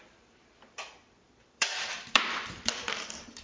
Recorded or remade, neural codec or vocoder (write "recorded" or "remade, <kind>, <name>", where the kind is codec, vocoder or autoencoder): remade, vocoder, BigVGAN v2